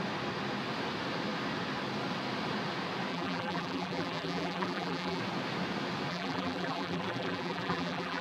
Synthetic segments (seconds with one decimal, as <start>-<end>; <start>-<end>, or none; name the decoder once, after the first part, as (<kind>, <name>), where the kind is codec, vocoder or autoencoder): 3.1-5.2 (vocoder, BigVGAN v2); 6.1-8.2